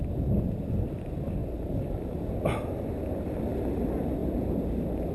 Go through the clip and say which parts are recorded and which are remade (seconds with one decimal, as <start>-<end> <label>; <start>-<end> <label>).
0.0-1.4 recorded; 1.4-3.4 remade; 3.4-4.2 recorded; 4.2-5.1 remade